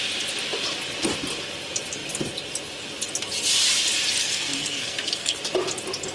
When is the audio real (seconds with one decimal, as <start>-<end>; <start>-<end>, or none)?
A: 0.0-4.2; 5.4-6.1